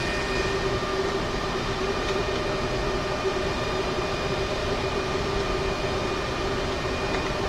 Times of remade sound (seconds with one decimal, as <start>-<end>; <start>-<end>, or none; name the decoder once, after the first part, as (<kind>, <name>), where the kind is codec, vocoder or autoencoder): 0.9-2.3 (vocoder, BigVGAN v2); 2.8-4.0; 4.6-5.7